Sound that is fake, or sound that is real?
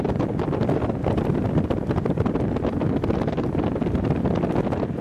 real